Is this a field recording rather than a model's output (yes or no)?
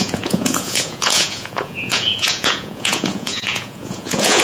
no